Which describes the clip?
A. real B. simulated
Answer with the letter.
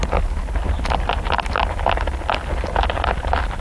A